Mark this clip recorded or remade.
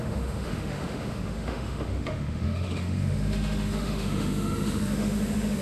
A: remade